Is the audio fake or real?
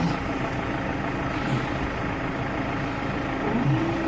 real